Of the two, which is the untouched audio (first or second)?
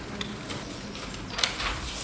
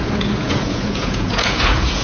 first